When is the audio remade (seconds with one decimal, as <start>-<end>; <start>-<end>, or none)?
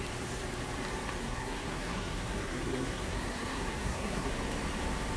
1.2-4.3